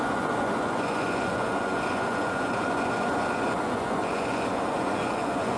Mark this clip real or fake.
fake